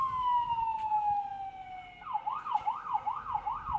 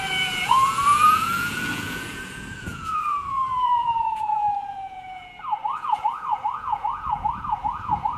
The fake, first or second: second